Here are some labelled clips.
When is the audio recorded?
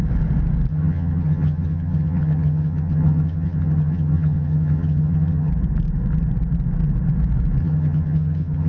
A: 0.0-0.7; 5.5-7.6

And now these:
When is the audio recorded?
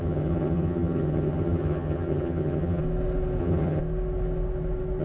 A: 2.8-3.4; 3.8-5.0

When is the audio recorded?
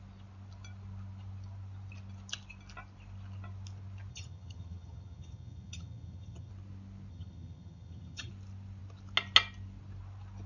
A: 0.0-4.1; 6.5-7.1; 8.3-10.5